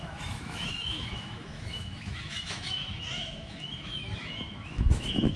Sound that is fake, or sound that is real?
fake